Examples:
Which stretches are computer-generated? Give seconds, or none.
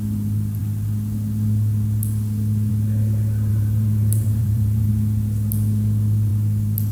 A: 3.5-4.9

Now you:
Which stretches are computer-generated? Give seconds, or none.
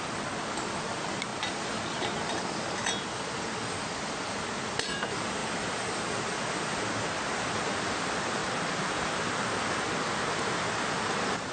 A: 5.4-6.1; 8.4-9.5